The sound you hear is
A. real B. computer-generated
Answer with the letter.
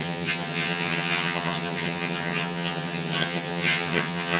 B